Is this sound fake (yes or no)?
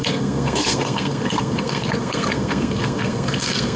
yes